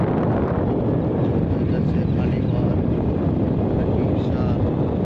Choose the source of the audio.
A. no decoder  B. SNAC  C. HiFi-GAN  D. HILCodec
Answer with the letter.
A